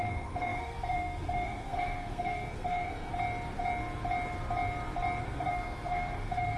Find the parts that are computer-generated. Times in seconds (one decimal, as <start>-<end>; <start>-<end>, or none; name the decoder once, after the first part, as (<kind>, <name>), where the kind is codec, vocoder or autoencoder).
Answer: 0.0-3.1 (codec, SNAC); 5.2-6.6